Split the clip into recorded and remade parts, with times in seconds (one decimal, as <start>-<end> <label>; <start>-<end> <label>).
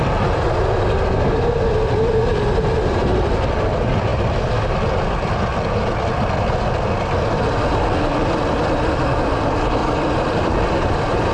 0.0-4.1 recorded; 4.1-4.8 remade; 4.8-9.8 recorded; 9.8-11.3 remade